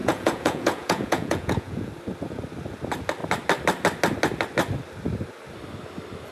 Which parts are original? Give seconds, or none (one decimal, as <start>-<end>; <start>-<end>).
1.9-6.3